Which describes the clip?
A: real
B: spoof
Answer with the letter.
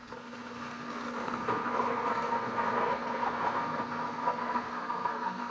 B